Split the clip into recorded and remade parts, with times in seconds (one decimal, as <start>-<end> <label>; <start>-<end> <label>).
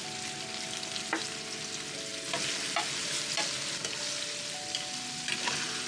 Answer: 0.0-5.9 recorded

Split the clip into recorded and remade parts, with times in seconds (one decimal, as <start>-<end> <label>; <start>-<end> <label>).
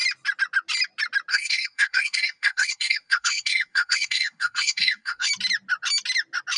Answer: 0.0-1.3 recorded; 1.3-5.3 remade; 5.3-6.6 recorded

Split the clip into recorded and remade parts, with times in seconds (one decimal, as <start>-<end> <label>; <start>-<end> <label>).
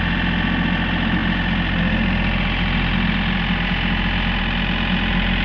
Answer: 0.0-5.4 recorded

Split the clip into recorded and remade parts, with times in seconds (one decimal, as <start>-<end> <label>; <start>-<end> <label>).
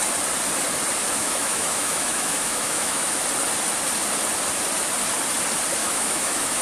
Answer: 0.0-1.2 recorded; 1.2-3.2 remade; 3.2-5.8 recorded; 5.8-6.6 remade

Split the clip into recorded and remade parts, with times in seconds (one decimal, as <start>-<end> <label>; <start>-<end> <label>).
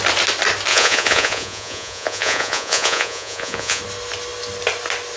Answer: 0.0-0.7 recorded; 0.7-3.8 remade; 3.8-5.2 recorded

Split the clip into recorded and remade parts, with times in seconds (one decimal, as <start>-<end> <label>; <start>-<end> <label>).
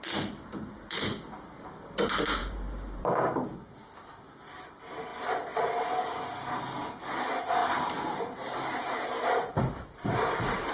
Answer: 0.0-2.4 recorded; 2.4-3.1 remade; 3.1-5.1 recorded; 5.1-5.7 remade; 5.7-7.6 recorded; 7.6-10.7 remade